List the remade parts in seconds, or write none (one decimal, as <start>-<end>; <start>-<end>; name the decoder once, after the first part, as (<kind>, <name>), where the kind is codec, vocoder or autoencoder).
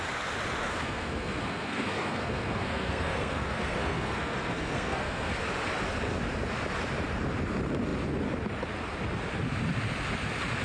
0.6-5.3 (codec, SNAC)